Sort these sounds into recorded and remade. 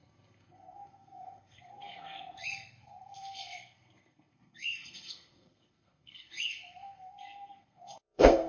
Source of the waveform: remade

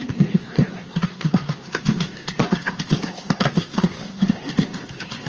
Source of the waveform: remade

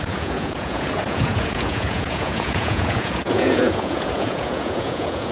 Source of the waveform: remade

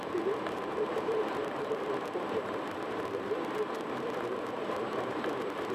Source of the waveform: remade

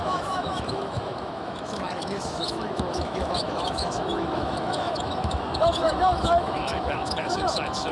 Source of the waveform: remade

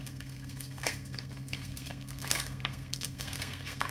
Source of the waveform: remade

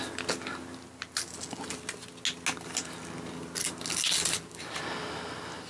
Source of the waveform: recorded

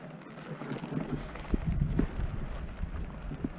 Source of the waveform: recorded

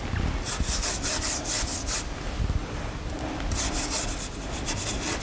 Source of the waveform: recorded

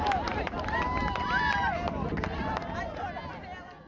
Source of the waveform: recorded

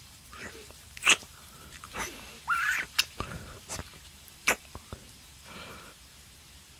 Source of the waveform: remade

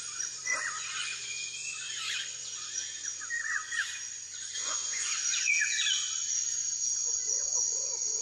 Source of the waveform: remade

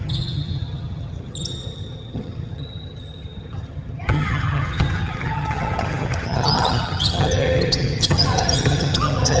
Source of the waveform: remade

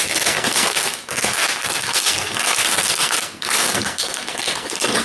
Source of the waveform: remade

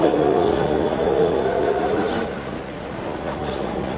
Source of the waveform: remade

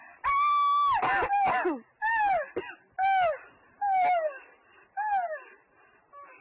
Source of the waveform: recorded